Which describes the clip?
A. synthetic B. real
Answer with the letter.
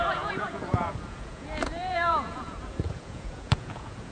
A